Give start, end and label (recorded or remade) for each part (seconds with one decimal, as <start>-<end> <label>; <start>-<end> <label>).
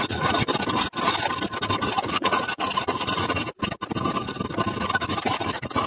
0.0-0.5 remade; 0.5-1.8 recorded; 1.8-3.4 remade; 3.4-4.8 recorded; 4.8-5.9 remade